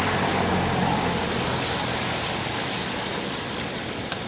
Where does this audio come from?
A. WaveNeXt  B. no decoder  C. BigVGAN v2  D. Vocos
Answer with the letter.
B